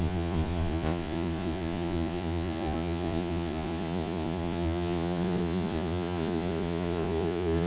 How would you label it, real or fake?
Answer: fake